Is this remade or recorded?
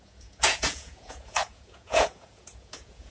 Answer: remade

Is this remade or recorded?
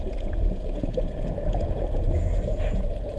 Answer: remade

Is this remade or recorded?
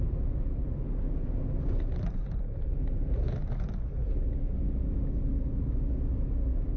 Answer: recorded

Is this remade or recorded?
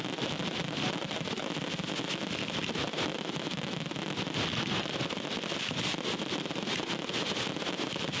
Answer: recorded